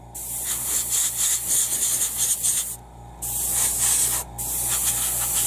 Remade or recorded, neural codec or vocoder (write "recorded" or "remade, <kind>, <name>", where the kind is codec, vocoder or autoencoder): recorded